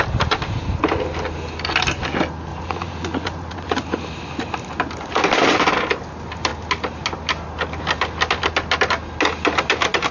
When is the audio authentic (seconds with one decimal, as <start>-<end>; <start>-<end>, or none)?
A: 0.0-2.5; 4.0-10.1